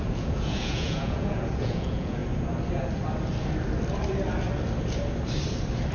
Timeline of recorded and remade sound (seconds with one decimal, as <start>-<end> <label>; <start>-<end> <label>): 0.0-2.2 remade; 2.2-5.9 recorded